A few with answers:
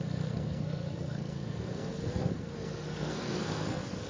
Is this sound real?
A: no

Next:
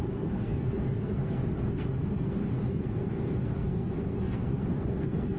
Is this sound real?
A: no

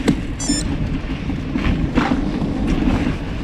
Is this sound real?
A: yes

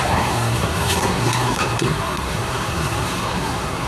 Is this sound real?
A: no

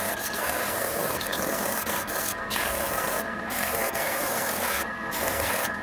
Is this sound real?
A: no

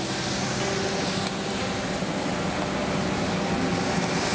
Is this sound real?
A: yes